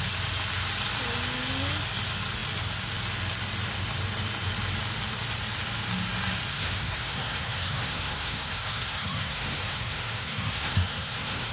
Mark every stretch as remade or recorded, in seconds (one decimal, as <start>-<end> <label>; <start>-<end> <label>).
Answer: 0.0-6.5 recorded; 6.5-11.5 remade